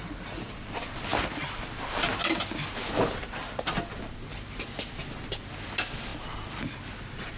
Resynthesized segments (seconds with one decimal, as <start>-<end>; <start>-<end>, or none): none